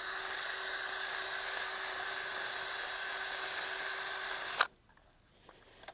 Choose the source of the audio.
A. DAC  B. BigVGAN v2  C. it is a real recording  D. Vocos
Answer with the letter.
C